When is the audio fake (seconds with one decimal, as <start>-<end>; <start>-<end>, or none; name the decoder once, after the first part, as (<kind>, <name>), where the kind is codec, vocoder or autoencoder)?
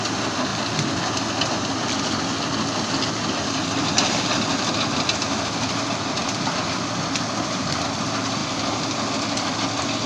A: 6.2-6.8 (vocoder, BigVGAN v2); 8.4-10.1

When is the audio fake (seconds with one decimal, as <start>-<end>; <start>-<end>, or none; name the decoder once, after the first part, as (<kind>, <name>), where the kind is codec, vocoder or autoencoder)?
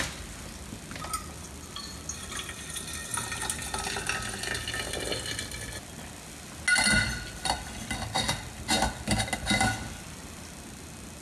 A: none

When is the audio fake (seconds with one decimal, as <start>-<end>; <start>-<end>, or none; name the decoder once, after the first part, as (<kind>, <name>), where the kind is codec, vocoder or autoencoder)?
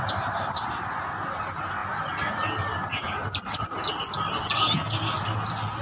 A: none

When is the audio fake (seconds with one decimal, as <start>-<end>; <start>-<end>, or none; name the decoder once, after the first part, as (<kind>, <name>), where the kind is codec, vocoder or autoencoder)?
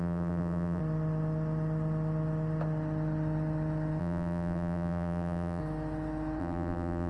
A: 0.0-0.8 (vocoder, BigVGAN v2); 4.0-5.6; 6.4-7.1